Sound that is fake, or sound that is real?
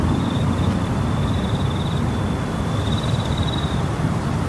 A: real